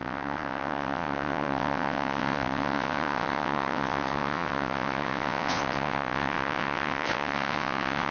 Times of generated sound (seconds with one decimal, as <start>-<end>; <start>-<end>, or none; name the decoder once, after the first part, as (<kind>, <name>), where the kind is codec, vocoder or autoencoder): 0.0-8.1 (vocoder, WaveNeXt)